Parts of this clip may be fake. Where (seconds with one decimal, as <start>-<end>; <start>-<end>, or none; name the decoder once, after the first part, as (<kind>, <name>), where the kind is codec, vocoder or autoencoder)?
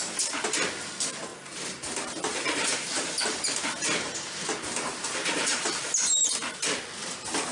1.3-5.8 (vocoder, BigVGAN v2); 6.2-6.8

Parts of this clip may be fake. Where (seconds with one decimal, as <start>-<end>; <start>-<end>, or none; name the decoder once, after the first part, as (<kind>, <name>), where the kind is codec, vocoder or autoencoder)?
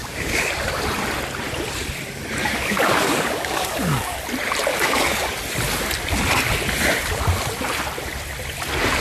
0.0-0.8 (codec, DAC); 2.4-4.2; 4.7-5.3